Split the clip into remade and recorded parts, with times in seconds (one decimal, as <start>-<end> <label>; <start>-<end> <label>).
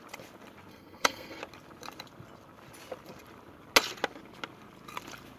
0.0-0.7 recorded; 0.7-1.4 remade; 1.4-5.4 recorded